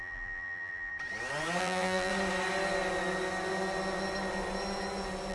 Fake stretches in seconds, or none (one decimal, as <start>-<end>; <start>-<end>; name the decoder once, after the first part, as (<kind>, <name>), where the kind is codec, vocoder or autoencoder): 0.0-0.9 (vocoder, BigVGAN v2); 1.6-2.1